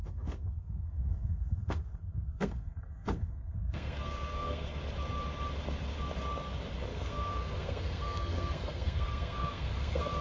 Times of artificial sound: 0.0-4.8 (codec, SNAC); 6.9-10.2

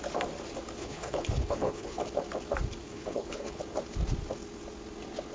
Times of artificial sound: 0.8-2.0 (codec, HILCodec); 2.8-3.6